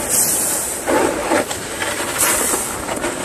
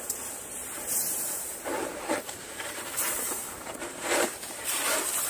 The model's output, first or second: second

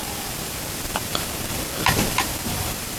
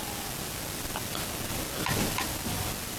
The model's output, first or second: first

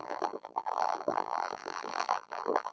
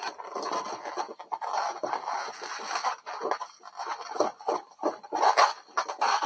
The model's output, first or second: first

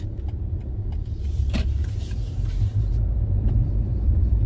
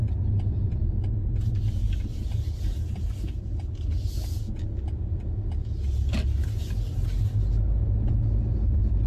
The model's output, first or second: first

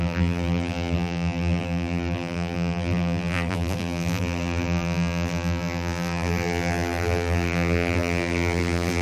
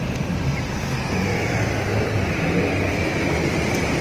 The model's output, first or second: first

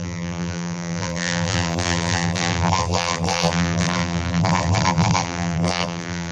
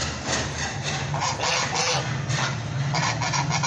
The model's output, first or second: first